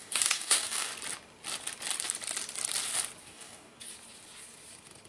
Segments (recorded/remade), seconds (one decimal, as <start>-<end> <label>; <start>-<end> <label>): 0.0-0.9 remade; 0.9-3.2 recorded; 3.2-3.9 remade; 3.9-5.1 recorded